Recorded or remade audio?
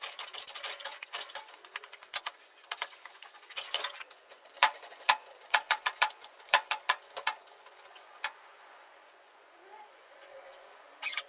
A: remade